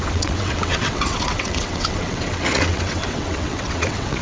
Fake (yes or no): yes